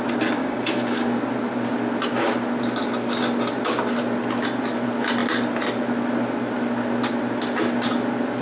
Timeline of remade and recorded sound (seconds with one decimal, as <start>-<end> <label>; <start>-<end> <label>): 0.0-0.4 recorded; 0.4-1.2 remade; 1.2-8.4 recorded